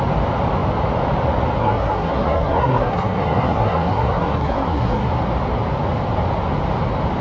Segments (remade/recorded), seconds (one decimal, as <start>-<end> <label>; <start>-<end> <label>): 0.0-1.6 recorded; 1.6-5.1 remade; 5.1-7.2 recorded